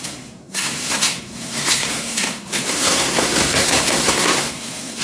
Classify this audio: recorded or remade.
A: remade